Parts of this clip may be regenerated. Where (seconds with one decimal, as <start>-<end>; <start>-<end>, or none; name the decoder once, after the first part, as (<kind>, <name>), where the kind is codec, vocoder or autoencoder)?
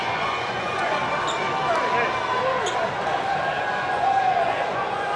0.0-1.0 (vocoder, Vocos); 3.6-5.2